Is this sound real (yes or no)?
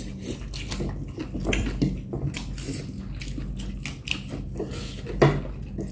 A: yes